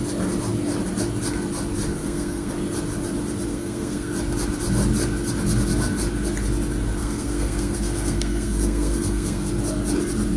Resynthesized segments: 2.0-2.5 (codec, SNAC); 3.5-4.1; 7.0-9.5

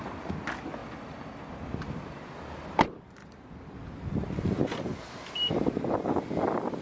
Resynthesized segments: none

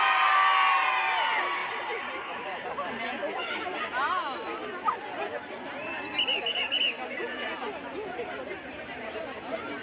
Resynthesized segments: 1.6-2.7 (vocoder, BigVGAN v2)

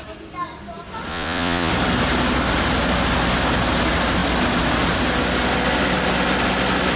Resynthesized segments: 1.1-1.7 (vocoder, Vocos)

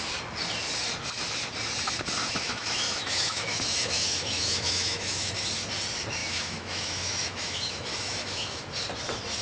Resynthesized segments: 2.2-5.3 (autoencoder, DAC-VAE); 6.2-8.6

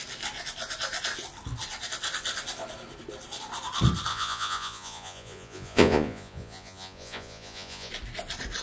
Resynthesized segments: 4.1-7.9 (vocoder, Vocos)